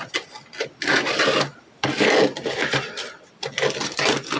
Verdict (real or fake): real